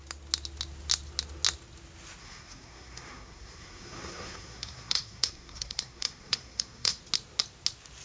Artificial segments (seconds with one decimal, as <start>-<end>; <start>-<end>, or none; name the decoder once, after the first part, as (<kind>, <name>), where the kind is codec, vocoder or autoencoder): 2.2-7.0 (codec, SNAC)